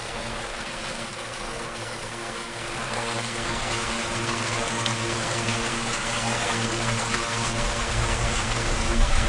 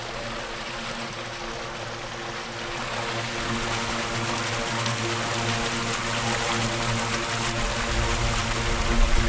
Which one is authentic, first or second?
second